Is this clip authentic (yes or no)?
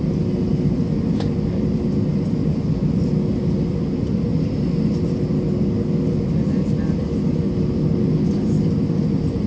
yes